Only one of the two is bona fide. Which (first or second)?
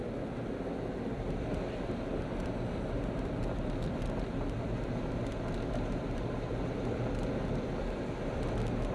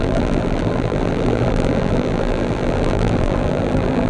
first